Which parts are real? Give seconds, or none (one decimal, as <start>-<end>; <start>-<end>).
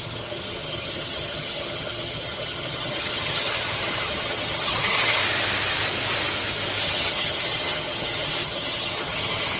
5.2-6.8